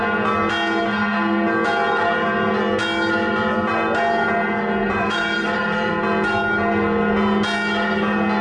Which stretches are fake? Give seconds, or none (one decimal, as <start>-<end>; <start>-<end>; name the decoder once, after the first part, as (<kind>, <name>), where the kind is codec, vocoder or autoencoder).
4.8-5.9 (vocoder, BigVGAN v2)